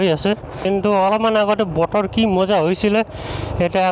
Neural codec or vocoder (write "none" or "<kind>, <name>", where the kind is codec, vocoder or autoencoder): none